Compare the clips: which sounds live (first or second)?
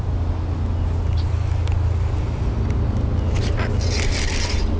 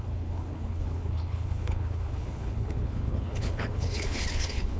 first